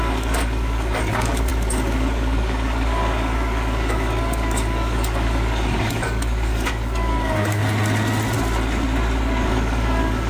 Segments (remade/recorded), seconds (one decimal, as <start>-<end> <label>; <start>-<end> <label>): 0.0-7.6 remade; 7.6-9.4 recorded; 9.4-10.3 remade